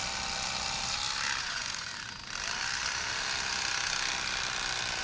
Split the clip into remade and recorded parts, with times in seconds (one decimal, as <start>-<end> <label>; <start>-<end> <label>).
0.0-1.4 recorded; 1.4-1.9 remade; 1.9-5.0 recorded